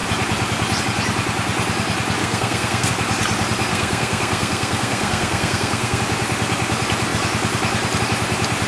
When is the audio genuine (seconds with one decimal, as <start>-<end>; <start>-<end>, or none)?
0.0-2.2; 2.9-3.7; 6.0-8.7